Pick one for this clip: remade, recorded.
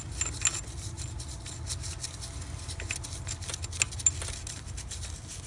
recorded